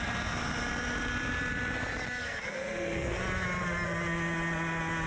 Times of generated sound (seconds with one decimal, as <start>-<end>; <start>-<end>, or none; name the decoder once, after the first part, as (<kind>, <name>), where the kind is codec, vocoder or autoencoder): 2.2-3.1 (codec, SNAC)